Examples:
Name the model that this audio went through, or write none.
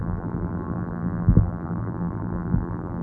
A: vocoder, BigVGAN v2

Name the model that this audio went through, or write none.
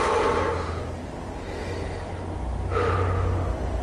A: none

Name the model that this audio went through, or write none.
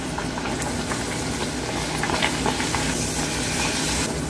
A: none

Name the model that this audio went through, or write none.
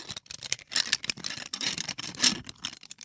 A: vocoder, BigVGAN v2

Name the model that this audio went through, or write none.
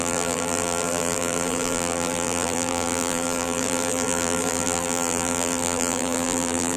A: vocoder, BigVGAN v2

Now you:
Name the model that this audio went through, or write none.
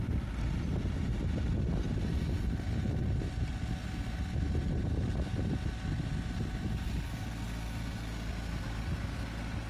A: none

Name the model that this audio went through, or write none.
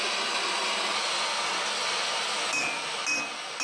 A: none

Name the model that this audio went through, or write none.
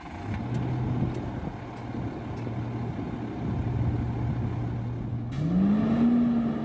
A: none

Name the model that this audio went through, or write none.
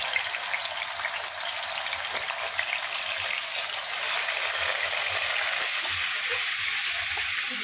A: none